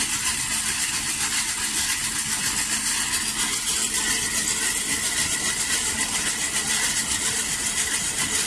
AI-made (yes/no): no